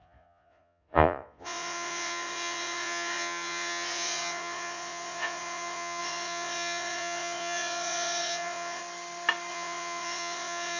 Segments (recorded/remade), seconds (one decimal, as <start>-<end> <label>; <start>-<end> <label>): 0.0-8.8 remade; 8.8-9.5 recorded; 9.5-10.8 remade